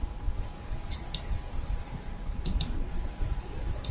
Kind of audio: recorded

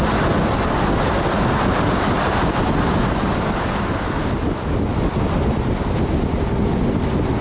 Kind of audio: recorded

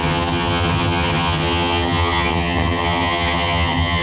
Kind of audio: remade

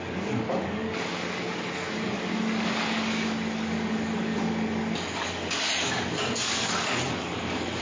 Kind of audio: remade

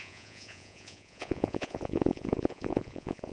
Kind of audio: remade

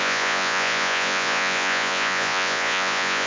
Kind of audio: remade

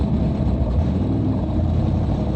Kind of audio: remade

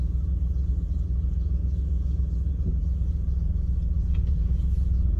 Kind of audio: remade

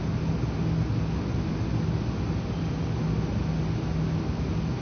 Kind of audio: recorded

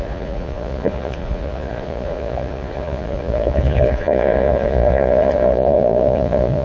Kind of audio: remade